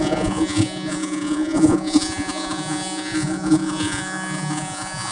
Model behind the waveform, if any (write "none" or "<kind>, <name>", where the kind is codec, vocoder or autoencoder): vocoder, Vocos